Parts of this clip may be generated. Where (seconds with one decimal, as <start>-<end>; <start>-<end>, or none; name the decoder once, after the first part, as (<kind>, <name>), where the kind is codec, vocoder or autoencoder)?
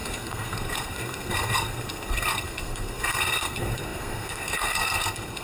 0.0-5.4 (codec, SNAC)